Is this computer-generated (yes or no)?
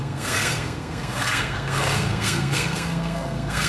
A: yes